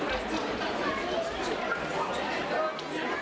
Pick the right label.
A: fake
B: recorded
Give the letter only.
B